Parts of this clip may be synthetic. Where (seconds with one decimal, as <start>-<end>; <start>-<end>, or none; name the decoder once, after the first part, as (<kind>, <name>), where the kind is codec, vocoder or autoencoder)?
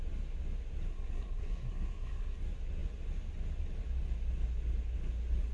0.9-2.4 (codec, SNAC)